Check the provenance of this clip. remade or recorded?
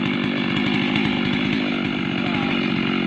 recorded